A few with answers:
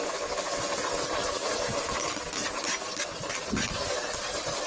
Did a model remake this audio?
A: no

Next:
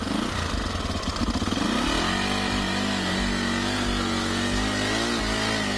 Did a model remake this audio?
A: no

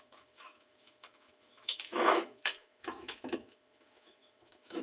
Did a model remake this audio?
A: yes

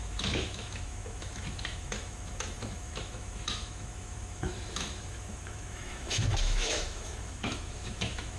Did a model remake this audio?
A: yes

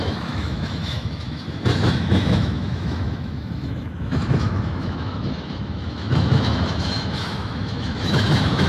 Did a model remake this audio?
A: yes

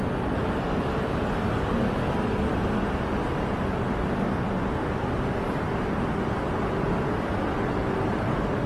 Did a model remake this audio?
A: no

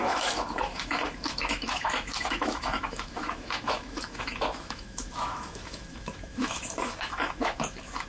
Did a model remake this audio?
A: yes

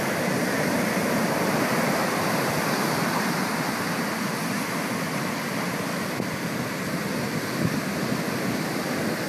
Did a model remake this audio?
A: no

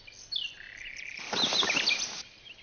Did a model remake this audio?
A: no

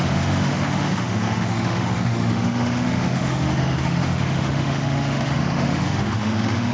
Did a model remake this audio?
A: yes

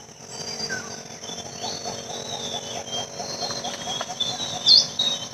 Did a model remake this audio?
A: no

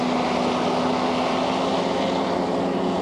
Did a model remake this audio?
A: no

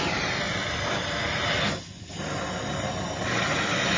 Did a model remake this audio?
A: no